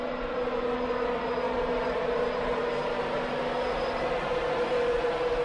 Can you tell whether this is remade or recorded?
recorded